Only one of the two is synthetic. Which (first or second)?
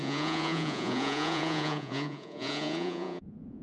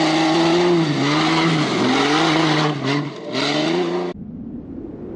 first